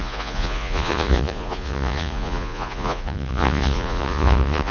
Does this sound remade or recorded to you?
remade